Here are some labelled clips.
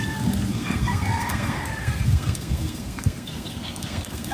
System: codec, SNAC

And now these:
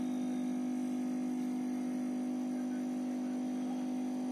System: none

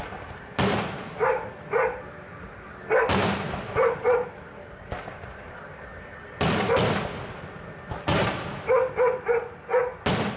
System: none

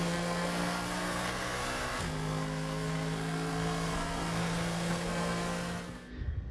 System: codec, SNAC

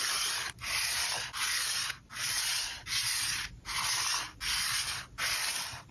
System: none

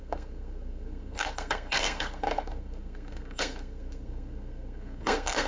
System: codec, SNAC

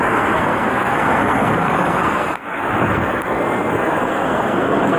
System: codec, SNAC